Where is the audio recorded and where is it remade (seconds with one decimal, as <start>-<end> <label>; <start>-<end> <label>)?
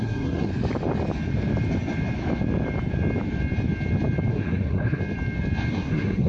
0.0-0.5 remade; 0.5-4.3 recorded; 4.3-5.0 remade; 5.0-5.7 recorded; 5.7-6.3 remade